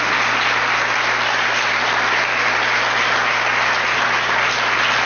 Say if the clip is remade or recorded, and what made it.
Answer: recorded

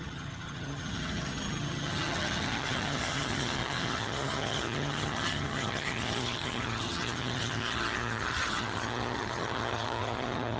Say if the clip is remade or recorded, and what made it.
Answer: remade, vocoder, HiFi-GAN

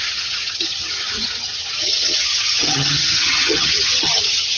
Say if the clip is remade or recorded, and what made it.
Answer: remade, vocoder, HiFi-GAN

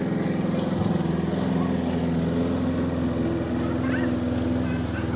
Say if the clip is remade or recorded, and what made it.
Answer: recorded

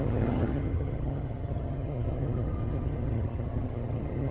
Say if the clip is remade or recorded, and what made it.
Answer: remade, vocoder, HiFi-GAN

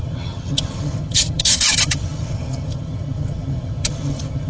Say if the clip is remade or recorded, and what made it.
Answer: remade, vocoder, HiFi-GAN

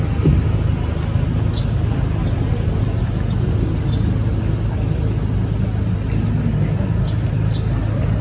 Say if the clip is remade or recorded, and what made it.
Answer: recorded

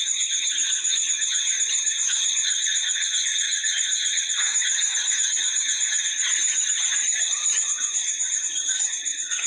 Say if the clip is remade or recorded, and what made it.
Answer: remade, vocoder, HiFi-GAN